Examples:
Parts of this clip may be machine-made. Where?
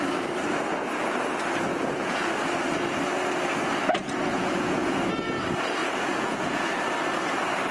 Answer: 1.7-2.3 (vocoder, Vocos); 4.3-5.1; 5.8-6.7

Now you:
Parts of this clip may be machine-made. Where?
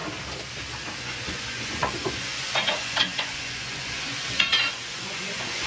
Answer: 1.0-5.7 (vocoder, Vocos)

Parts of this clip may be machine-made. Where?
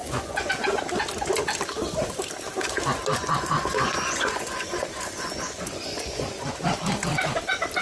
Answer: 0.0-0.7 (vocoder, Vocos); 3.2-6.6